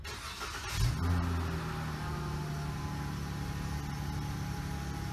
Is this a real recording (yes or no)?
yes